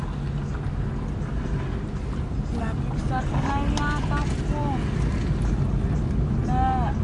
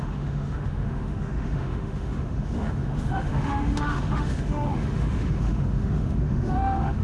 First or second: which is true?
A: first